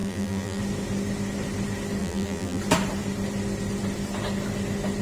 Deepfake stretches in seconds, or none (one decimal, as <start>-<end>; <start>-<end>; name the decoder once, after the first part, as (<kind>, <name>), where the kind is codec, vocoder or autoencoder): 0.0-0.6 (vocoder, BigVGAN v2); 2.0-2.6